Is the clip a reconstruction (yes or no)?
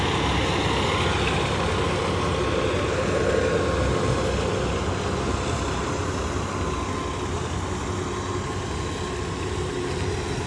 no